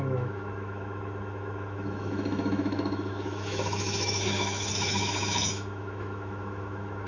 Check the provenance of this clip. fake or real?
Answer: fake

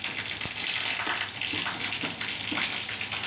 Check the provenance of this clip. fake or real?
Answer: real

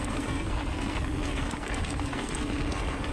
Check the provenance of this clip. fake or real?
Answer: fake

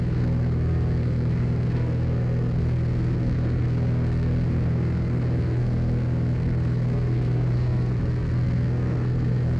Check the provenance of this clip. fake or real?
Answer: fake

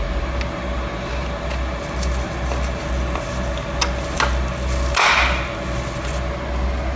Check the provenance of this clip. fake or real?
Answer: real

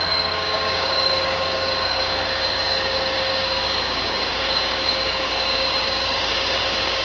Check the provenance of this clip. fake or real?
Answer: fake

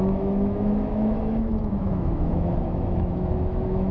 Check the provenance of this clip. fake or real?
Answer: fake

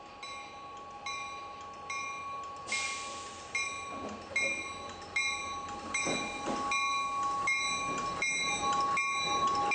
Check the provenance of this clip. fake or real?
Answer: real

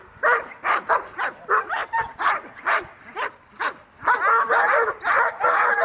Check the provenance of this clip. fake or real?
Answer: real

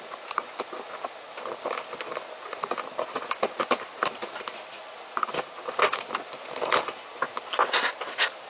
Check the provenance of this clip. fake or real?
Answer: real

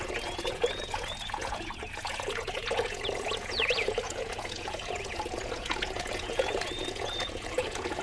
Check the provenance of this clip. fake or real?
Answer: fake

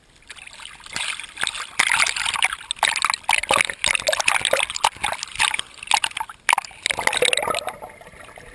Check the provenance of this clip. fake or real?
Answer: real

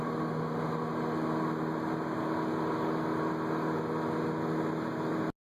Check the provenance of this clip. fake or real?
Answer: real